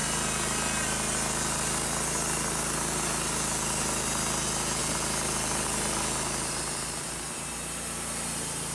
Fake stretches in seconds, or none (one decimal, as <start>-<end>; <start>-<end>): none

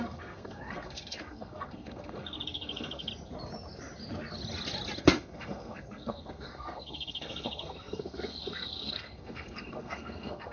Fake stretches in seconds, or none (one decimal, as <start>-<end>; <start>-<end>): 0.0-3.1; 5.0-10.5